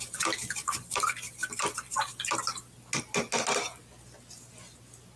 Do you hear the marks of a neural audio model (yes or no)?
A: no